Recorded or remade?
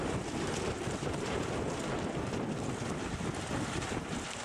remade